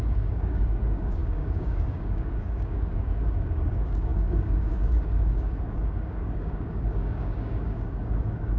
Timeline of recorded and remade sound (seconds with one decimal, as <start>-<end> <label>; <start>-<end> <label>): 0.0-8.6 remade